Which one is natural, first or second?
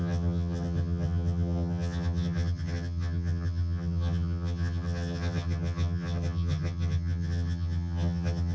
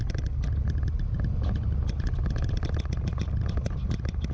second